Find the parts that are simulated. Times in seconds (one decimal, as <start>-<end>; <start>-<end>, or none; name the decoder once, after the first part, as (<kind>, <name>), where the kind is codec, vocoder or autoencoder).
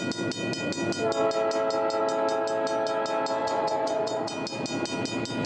3.4-4.3 (vocoder, Vocos)